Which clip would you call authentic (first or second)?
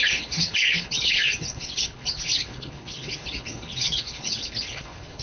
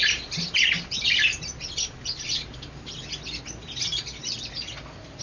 second